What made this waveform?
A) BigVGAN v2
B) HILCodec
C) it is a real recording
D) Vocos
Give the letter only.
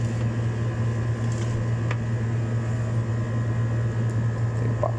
C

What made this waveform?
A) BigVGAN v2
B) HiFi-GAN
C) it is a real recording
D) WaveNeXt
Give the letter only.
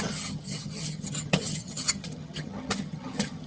B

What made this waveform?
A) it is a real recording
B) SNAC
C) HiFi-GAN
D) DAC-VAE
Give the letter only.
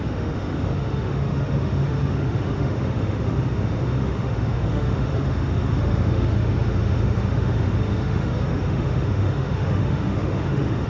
D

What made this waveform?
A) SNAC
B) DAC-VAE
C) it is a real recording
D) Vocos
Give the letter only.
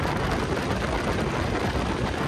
C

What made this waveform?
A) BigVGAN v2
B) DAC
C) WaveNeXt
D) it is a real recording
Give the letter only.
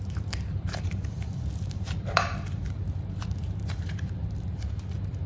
A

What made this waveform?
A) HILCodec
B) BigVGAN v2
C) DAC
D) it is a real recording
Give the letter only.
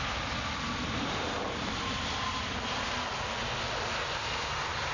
D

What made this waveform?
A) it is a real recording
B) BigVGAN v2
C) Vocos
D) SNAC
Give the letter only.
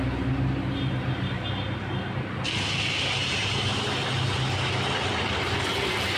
A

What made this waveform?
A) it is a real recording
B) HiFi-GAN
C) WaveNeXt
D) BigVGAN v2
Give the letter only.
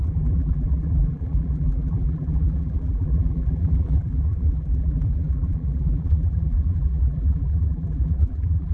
D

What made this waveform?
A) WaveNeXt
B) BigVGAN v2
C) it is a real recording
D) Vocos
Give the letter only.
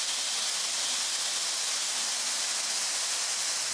C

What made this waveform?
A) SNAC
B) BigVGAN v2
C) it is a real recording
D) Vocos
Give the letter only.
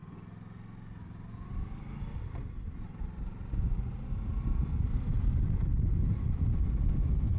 C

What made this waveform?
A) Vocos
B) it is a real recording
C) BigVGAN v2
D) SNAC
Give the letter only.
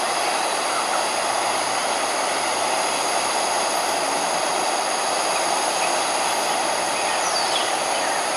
B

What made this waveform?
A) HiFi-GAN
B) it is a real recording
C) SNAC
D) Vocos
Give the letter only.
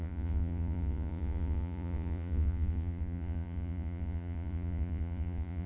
D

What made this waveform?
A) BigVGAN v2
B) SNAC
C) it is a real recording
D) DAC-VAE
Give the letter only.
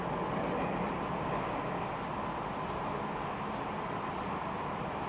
C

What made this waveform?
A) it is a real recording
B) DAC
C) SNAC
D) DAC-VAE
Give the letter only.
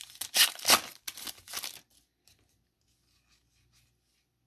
A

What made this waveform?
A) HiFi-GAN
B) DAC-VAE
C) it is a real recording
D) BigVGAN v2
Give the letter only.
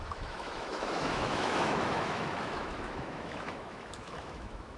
B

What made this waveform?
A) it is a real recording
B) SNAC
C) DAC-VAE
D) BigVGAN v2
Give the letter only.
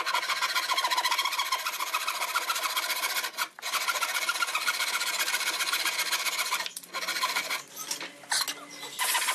A